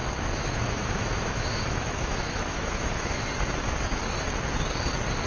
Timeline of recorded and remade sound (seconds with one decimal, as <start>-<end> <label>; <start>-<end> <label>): 0.0-3.2 remade; 3.2-5.3 recorded